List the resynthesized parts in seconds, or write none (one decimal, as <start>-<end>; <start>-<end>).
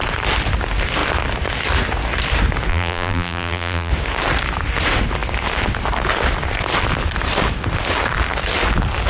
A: 2.7-3.9